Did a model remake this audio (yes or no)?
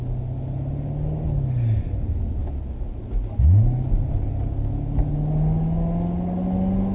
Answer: no